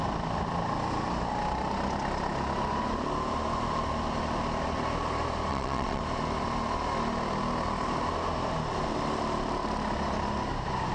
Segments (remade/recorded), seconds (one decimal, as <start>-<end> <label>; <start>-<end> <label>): 0.0-5.5 recorded; 5.5-6.0 remade; 6.0-10.9 recorded